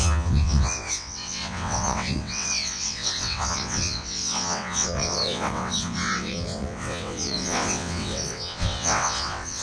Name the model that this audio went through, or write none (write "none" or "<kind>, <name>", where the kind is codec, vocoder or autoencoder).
vocoder, WaveNeXt